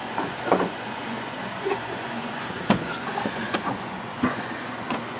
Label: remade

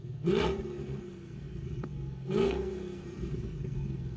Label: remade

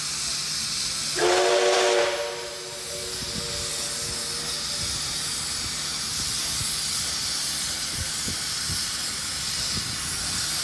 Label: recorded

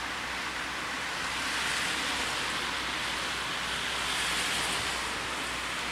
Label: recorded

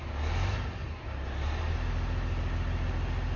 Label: recorded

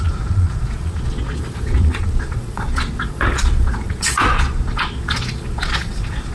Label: remade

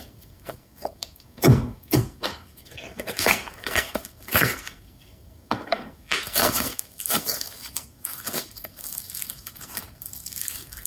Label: remade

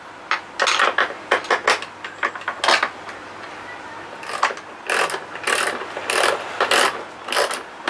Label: recorded